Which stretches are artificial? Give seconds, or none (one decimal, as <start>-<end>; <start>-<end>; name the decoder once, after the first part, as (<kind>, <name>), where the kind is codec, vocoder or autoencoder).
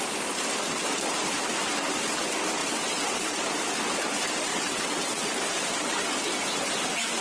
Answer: 2.6-3.3 (vocoder, WaveNeXt); 4.5-5.3